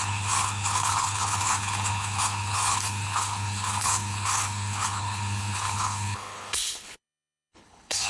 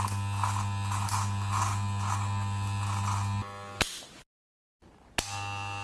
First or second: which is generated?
first